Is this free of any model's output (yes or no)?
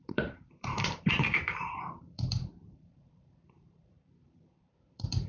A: no